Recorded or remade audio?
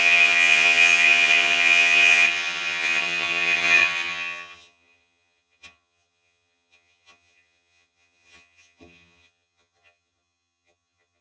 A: remade